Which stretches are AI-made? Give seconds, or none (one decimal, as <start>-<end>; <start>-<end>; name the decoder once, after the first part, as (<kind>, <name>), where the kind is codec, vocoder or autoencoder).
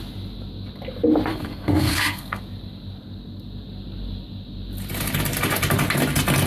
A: 1.3-2.4 (codec, SNAC)